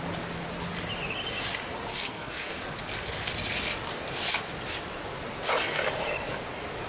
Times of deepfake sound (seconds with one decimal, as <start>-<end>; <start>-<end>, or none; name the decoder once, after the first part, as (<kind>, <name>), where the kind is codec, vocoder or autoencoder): 1.9-2.5 (codec, SNAC)